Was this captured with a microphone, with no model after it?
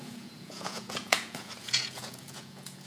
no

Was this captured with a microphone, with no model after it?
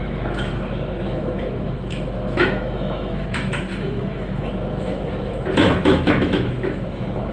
no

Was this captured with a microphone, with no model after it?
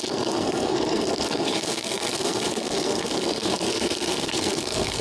no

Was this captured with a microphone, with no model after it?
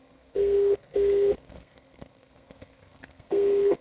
no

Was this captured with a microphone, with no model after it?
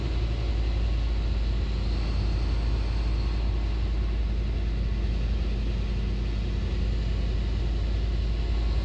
yes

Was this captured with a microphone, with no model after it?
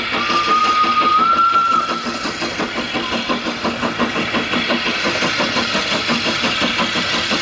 no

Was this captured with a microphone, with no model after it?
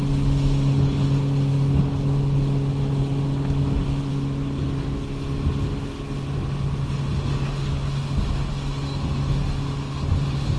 yes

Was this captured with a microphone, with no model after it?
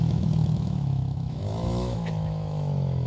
no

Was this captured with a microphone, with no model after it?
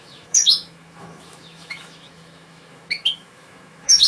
no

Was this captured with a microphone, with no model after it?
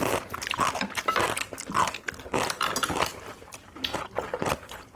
yes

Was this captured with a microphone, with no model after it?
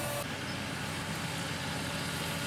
yes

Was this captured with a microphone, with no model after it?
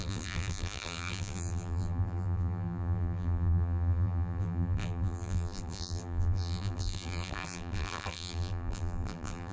no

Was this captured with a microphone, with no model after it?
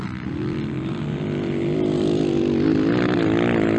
no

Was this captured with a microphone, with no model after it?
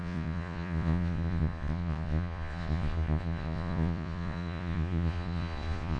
no